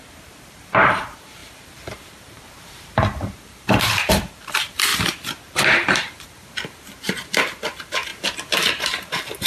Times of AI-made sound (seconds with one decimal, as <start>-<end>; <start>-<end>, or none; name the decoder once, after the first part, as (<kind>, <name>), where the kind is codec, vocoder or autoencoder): 0.0-4.9 (vocoder, BigVGAN v2); 5.9-8.1; 8.7-9.5